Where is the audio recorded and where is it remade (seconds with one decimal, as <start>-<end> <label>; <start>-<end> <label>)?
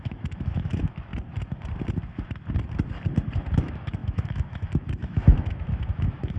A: 0.0-1.1 remade; 1.1-3.6 recorded; 3.6-6.4 remade